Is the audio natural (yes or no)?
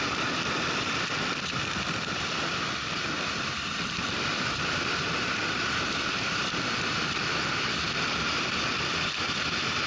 no